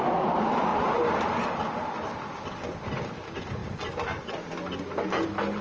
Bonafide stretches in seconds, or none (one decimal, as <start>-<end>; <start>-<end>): 0.0-5.6